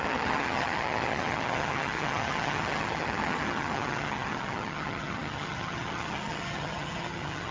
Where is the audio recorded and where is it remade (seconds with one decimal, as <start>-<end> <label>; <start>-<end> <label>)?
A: 0.0-7.5 remade